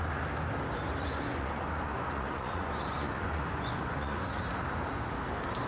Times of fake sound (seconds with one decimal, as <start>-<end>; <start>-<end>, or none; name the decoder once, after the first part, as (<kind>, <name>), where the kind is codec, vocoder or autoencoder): 1.0-4.4 (vocoder, Vocos)